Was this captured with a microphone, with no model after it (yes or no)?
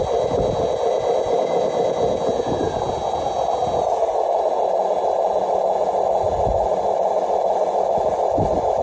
yes